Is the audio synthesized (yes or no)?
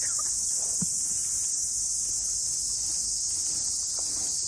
no